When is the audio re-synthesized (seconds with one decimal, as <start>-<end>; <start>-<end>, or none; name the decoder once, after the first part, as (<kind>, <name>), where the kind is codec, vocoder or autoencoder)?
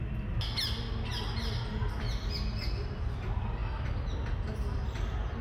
none